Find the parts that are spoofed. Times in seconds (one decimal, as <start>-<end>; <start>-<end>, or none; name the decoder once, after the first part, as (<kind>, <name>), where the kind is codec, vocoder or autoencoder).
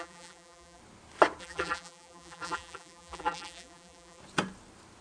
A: 0.0-0.8 (vocoder, BigVGAN v2); 1.4-4.2